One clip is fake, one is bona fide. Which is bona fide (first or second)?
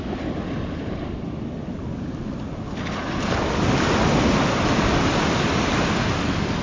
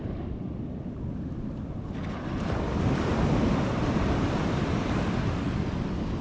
first